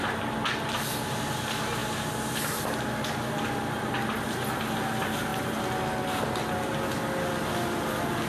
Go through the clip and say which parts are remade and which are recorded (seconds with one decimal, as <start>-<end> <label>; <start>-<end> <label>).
0.0-8.3 recorded